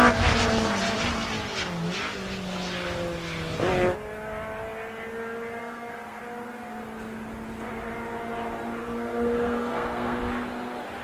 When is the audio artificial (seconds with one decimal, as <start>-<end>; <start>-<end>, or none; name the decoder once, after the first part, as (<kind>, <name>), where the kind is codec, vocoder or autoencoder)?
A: 5.6-6.2 (codec, SNAC); 8.8-10.2